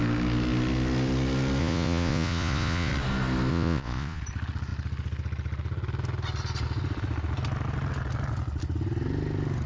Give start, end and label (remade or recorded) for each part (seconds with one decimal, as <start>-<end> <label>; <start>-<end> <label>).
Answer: 0.0-1.6 recorded; 1.6-2.9 remade; 2.9-3.5 recorded; 3.5-4.2 remade; 4.2-9.7 recorded